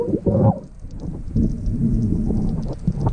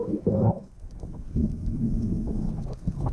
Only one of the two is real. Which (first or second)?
first